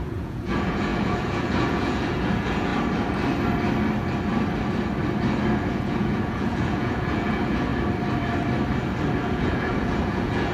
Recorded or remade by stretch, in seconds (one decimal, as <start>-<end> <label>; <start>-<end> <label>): 0.0-2.7 remade; 2.7-5.7 recorded; 5.7-7.7 remade; 7.7-9.2 recorded; 9.2-10.5 remade